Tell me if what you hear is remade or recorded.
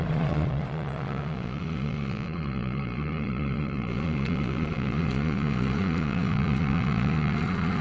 remade